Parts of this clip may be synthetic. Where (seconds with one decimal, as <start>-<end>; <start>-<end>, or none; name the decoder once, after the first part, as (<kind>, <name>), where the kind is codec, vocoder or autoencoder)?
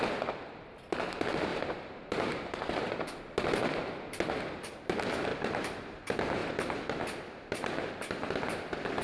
1.5-2.8 (vocoder, BigVGAN v2); 5.3-6.0; 6.4-7.9